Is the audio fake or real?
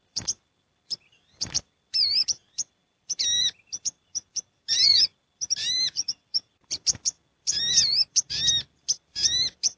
fake